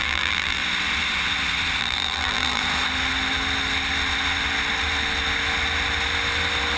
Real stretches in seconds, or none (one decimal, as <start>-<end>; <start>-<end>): 0.6-1.8; 2.6-6.8